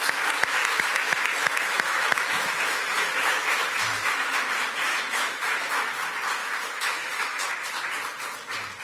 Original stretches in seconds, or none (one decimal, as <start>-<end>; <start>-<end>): 0.0-0.6; 4.5-4.9; 5.9-6.4; 7.5-8.8